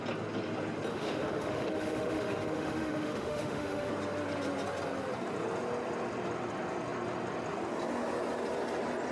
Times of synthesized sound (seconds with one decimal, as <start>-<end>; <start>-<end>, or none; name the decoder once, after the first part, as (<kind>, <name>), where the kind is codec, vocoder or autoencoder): 0.9-3.9 (autoencoder, DAC-VAE)